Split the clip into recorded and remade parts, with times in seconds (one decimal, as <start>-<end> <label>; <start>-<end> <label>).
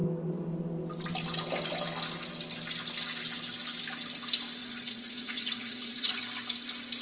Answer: 0.0-4.6 recorded; 4.6-6.2 remade; 6.2-7.0 recorded